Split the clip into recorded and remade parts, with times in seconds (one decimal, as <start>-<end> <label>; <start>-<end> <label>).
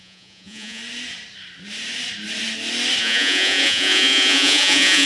0.0-0.8 remade; 0.8-3.0 recorded; 3.0-5.1 remade